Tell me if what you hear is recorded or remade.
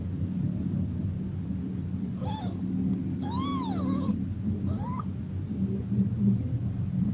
recorded